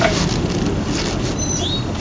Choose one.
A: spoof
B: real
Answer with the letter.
B